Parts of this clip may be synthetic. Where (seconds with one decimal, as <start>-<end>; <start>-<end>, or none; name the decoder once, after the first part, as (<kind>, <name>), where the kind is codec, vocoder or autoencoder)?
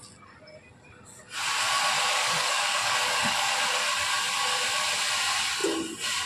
2.1-3.5 (codec, DAC)